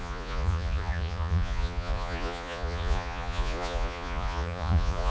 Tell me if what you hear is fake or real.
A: fake